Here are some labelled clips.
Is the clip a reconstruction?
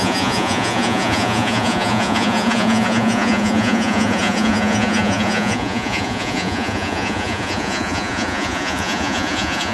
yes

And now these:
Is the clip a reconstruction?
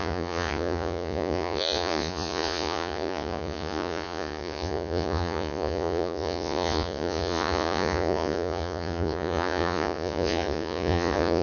yes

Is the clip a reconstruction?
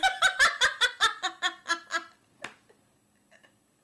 no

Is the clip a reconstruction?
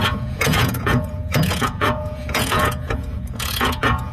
yes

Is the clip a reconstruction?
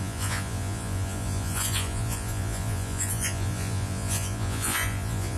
yes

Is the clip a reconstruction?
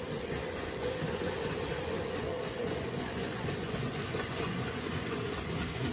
yes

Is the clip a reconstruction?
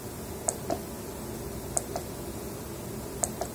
no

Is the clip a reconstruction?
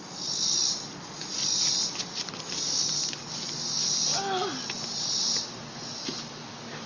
no